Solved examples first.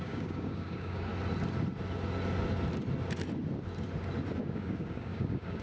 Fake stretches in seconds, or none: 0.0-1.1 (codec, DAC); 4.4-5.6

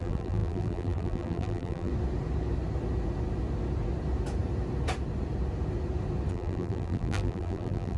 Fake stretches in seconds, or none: 0.0-1.9 (vocoder, BigVGAN v2); 6.3-8.0

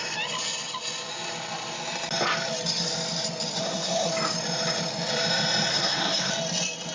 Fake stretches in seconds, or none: 3.6-4.1 (codec, SNAC); 5.7-6.3